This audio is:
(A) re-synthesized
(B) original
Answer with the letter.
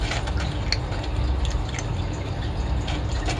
B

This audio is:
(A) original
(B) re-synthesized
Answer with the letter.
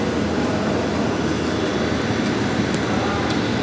A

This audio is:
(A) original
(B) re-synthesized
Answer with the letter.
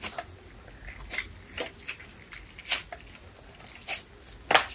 A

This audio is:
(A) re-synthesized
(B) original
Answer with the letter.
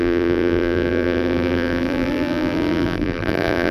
A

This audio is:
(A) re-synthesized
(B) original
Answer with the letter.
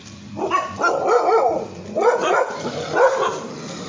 B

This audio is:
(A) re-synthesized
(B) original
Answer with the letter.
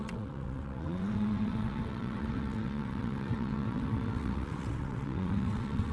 A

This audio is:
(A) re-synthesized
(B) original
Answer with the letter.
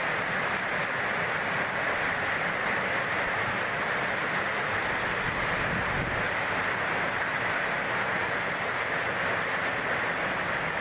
B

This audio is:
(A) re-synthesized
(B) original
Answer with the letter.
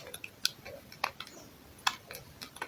B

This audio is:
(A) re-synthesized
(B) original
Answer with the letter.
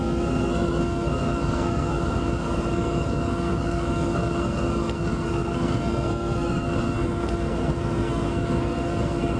A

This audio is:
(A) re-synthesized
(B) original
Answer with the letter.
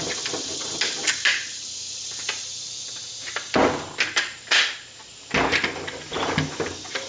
B